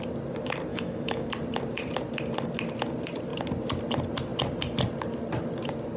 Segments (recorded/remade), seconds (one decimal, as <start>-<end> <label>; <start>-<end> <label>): 0.0-0.7 recorded; 0.7-1.3 remade; 1.3-6.0 recorded